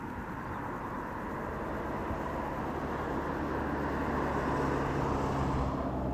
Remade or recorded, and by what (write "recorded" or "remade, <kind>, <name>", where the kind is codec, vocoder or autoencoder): recorded